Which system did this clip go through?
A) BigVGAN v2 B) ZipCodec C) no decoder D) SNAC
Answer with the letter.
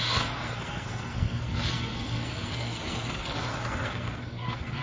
D